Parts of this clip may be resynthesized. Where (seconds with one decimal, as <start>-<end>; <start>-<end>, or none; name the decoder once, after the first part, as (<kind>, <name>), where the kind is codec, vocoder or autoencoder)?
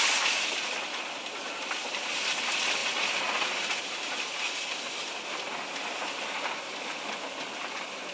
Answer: none